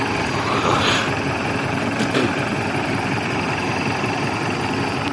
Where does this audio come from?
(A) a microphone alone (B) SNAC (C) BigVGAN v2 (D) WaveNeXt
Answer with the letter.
C